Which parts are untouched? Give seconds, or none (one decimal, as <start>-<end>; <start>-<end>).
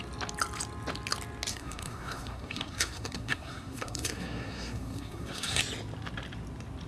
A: 0.0-1.5; 5.6-6.9